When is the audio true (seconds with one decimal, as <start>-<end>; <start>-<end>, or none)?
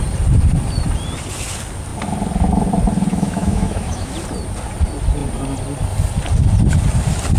0.0-3.1; 4.1-7.4